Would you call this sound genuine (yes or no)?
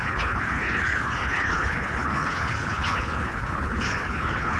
no